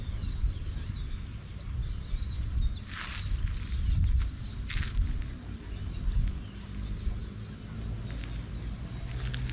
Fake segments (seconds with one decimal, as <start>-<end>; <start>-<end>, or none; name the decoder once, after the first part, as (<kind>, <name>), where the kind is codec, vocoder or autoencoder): none